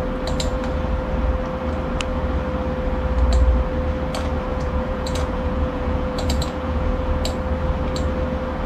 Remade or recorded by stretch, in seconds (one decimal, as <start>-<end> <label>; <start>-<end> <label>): 0.0-4.5 recorded; 4.5-7.0 remade; 7.0-8.7 recorded